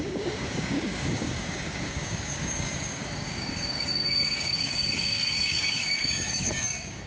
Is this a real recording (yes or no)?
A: no